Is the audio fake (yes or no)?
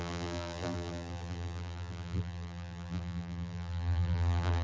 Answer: yes